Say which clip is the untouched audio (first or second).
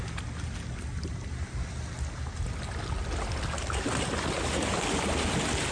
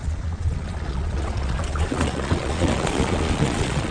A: first